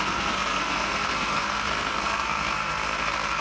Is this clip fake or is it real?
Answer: fake